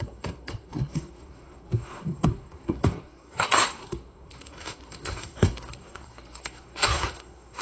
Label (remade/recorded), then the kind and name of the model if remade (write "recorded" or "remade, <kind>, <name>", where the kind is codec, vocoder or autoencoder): remade, codec, SNAC